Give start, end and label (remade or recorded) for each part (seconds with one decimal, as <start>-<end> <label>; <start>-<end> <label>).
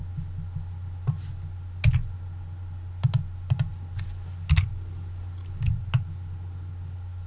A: 0.0-7.3 recorded